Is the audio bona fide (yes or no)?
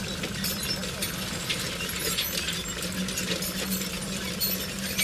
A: yes